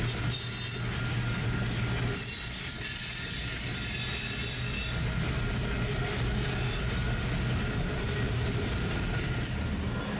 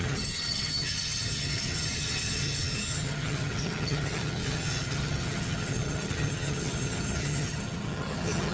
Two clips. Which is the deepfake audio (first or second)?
second